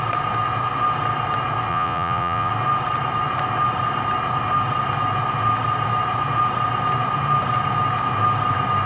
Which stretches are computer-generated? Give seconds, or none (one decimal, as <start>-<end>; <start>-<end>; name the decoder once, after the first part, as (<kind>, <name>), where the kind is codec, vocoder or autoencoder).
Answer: 1.7-2.5 (vocoder, Vocos)